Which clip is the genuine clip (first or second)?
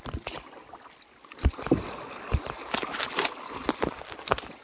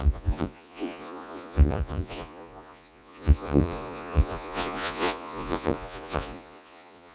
first